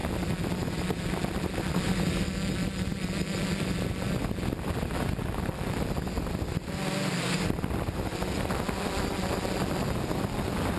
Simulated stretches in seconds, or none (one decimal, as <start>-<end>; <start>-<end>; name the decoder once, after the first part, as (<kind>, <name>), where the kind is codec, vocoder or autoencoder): none